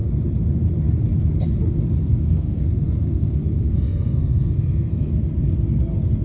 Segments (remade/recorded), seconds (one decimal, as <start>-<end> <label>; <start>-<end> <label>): 0.0-2.0 recorded; 2.0-5.1 remade; 5.1-6.2 recorded